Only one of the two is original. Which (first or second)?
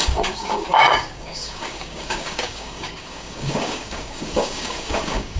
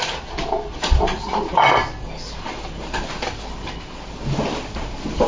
second